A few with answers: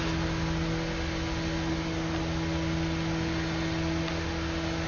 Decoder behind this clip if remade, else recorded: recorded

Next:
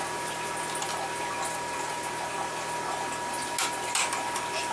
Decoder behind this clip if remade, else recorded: recorded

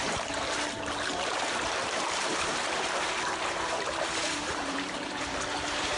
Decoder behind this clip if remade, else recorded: remade, vocoder, BigVGAN v2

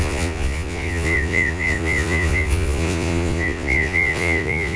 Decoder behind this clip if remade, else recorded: remade, vocoder, Vocos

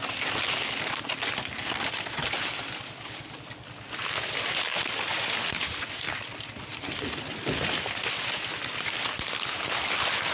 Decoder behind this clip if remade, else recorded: recorded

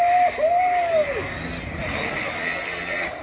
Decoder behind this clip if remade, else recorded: recorded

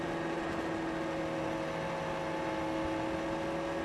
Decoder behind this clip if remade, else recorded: recorded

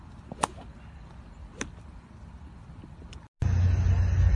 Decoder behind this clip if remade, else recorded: recorded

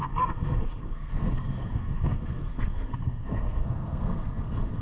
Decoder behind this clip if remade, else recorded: remade, codec, SNAC